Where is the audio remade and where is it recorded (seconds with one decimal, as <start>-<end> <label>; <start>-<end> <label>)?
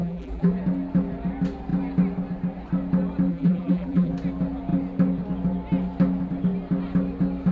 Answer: 0.0-0.5 remade; 0.5-3.3 recorded; 3.3-4.1 remade; 4.1-7.5 recorded